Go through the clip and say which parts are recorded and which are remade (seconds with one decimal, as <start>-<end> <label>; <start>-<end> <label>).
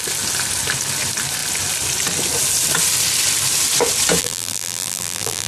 0.0-4.2 recorded; 4.2-5.5 remade